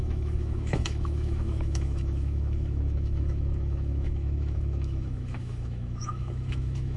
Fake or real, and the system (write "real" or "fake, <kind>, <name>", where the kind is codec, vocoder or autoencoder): fake, autoencoder, DAC-VAE